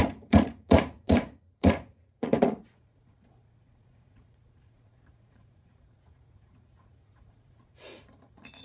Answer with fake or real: fake